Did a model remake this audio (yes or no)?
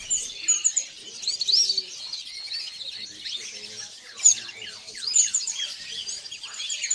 no